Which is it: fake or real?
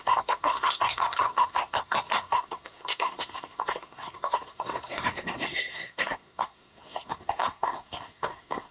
fake